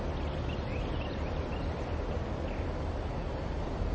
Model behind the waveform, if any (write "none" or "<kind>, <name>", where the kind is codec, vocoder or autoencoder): none